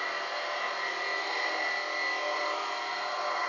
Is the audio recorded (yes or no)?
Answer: yes